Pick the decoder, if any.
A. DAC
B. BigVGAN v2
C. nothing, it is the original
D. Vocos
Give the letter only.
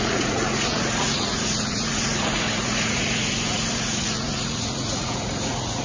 D